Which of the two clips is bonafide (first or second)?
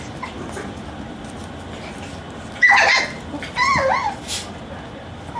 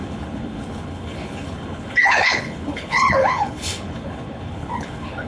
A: first